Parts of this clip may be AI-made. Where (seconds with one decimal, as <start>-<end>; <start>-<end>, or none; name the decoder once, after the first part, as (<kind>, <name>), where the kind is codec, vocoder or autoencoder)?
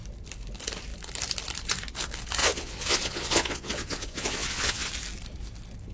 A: 2.4-4.9 (vocoder, Vocos)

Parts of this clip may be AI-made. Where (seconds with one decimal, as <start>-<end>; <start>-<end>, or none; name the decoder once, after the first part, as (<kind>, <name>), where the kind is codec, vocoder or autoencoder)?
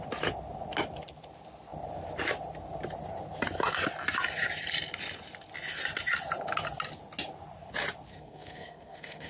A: 8.1-9.3 (codec, SNAC)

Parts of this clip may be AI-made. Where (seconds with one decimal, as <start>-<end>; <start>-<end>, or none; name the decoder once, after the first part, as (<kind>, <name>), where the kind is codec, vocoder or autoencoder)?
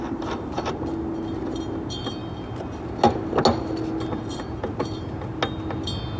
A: none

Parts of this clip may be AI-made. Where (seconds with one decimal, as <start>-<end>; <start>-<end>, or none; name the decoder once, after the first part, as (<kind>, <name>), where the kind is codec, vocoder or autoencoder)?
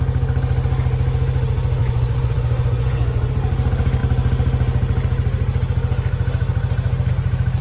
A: 1.8-3.3 (vocoder, Vocos)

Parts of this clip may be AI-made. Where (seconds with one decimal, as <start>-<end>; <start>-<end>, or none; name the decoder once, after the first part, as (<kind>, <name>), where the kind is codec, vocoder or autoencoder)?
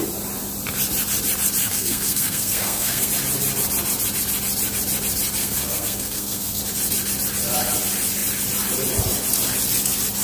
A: 1.6-3.1 (codec, SNAC); 5.4-6.6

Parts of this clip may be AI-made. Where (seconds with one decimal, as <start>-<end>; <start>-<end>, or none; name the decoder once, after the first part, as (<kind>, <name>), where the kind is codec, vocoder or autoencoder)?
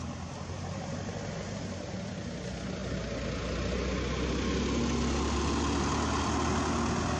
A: none